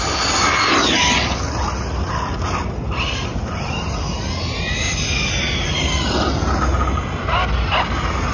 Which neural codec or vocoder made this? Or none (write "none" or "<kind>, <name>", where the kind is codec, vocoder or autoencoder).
none